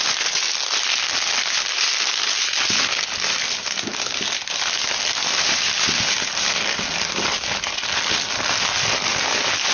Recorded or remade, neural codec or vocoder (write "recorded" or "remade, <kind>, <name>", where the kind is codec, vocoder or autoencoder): recorded